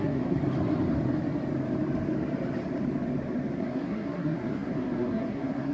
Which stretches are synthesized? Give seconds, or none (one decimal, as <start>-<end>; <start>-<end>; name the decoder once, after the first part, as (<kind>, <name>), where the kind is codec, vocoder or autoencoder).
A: 0.0-0.4 (codec, SNAC); 3.5-5.7